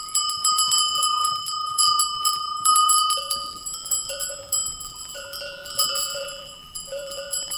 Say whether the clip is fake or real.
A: fake